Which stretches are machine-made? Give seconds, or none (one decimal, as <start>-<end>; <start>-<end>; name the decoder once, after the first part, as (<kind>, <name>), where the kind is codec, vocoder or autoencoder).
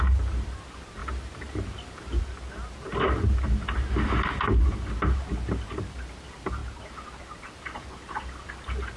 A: none